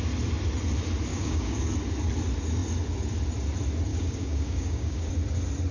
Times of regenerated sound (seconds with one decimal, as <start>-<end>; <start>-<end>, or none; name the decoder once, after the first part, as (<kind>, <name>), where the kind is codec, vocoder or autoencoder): 1.1-1.6 (codec, DAC); 3.9-5.1